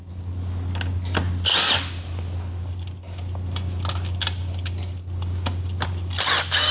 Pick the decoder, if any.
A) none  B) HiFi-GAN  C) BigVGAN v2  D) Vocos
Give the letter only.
A